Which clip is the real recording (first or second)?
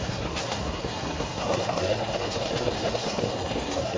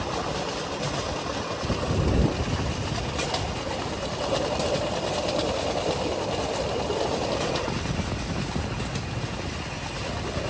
second